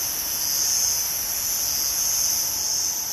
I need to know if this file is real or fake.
real